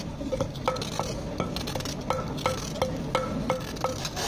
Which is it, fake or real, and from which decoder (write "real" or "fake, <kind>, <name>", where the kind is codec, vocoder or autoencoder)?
real